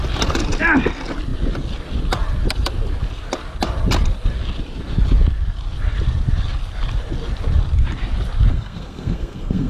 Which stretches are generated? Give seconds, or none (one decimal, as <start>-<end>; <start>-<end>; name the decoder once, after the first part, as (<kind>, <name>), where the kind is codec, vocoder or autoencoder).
8.5-9.7 (codec, SNAC)